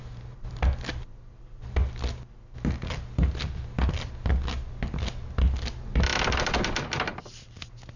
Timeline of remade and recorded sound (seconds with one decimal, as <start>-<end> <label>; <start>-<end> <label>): 0.0-8.0 recorded